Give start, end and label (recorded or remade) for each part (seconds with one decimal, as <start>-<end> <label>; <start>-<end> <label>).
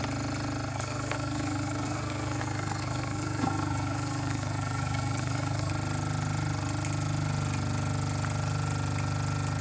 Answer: 0.0-0.7 recorded; 0.7-5.7 remade; 5.7-9.6 recorded